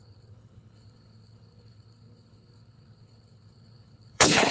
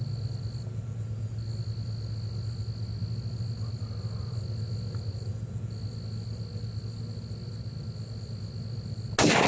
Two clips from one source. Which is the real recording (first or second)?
second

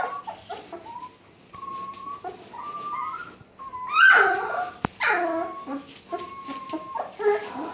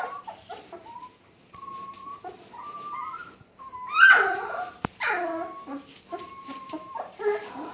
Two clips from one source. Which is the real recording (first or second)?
first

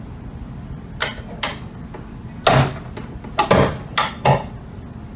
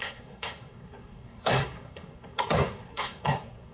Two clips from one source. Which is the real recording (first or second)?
first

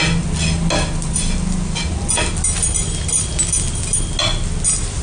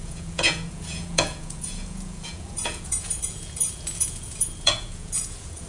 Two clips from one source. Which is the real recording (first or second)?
first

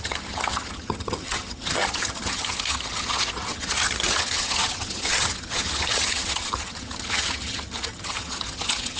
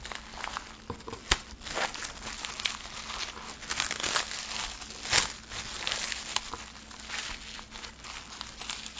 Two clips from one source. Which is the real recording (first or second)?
second